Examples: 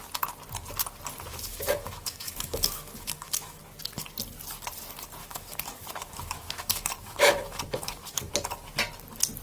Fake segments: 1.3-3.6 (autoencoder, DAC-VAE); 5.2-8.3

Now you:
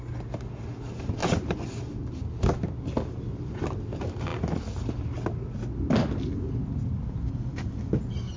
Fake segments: 1.2-1.9 (vocoder, BigVGAN v2)

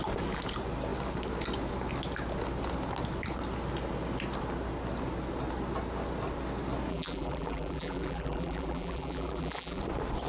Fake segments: 6.9-9.8 (vocoder, BigVGAN v2)